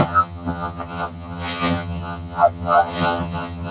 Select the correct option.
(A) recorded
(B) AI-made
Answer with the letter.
B